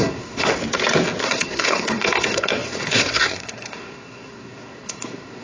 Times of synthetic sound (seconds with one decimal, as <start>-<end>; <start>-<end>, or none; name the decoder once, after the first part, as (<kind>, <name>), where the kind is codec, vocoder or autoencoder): 0.0-0.6 (codec, SNAC); 1.2-5.4